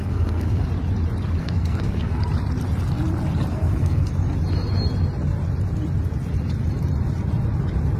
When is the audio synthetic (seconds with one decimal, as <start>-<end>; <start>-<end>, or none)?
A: 0.0-0.6; 1.4-2.2; 3.5-4.1